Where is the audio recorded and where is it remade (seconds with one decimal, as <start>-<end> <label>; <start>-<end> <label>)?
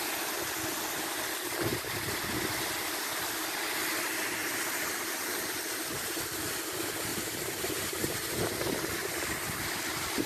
0.0-7.1 recorded; 7.1-9.7 remade; 9.7-10.3 recorded